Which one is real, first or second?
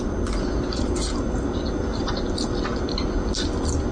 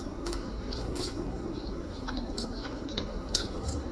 first